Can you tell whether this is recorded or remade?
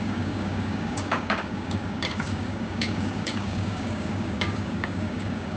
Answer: remade